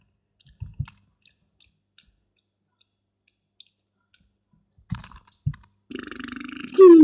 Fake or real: real